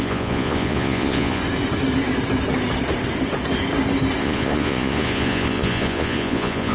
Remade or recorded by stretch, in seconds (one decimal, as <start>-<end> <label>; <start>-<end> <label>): 0.0-1.4 remade; 1.4-4.2 recorded; 4.2-6.7 remade